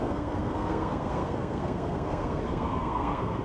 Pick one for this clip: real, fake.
fake